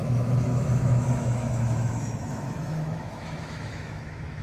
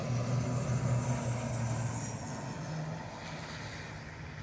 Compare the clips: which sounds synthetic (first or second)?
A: first